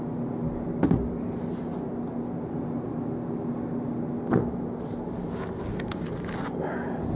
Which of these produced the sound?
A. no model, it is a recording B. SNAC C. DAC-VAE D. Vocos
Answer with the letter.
A